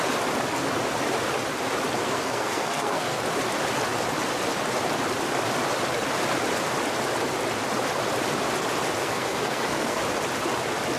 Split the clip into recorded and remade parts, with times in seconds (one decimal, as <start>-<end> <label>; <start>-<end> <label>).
0.0-2.0 recorded; 2.0-3.2 remade; 3.2-9.0 recorded; 9.0-10.0 remade; 10.0-11.0 recorded